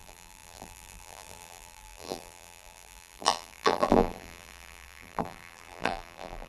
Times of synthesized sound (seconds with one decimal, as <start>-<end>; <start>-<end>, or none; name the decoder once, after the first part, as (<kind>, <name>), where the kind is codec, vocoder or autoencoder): 0.0-6.5 (vocoder, BigVGAN v2)